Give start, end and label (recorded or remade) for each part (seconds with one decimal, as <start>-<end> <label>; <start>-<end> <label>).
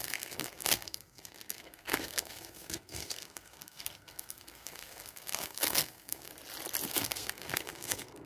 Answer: 0.0-6.3 remade; 6.3-6.9 recorded; 6.9-8.3 remade